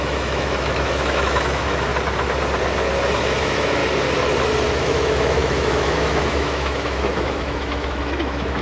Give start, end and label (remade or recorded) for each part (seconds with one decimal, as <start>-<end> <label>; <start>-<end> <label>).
0.0-1.9 remade; 1.9-3.4 recorded; 3.4-3.8 remade; 3.8-4.8 recorded; 4.8-8.6 remade